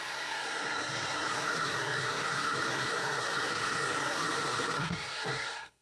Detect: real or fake fake